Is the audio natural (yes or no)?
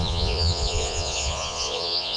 no